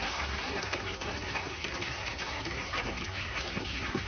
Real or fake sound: fake